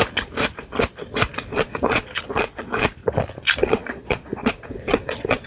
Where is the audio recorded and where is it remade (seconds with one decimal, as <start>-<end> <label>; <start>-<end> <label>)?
0.0-1.5 recorded; 1.5-3.2 remade; 3.2-3.6 recorded; 3.6-5.5 remade